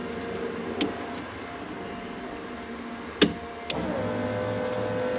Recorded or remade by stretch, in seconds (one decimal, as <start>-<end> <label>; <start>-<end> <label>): 0.0-5.2 recorded